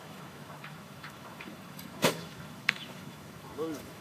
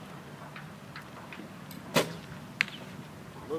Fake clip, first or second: first